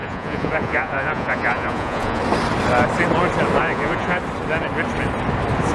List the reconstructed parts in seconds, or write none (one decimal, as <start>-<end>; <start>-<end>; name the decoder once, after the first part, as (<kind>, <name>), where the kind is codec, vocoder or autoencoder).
0.0-2.2 (vocoder, Vocos); 3.6-4.2